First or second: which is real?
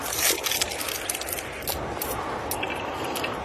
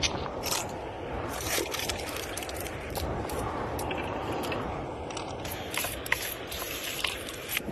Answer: first